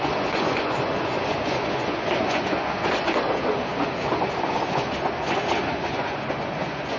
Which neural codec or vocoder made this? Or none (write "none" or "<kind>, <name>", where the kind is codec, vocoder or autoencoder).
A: vocoder, Vocos